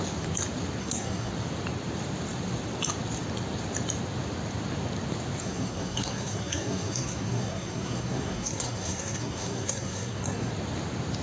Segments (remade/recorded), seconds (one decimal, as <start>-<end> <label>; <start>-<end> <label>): 0.0-0.8 recorded; 0.8-1.3 remade; 1.3-5.4 recorded; 5.4-10.5 remade; 10.5-11.2 recorded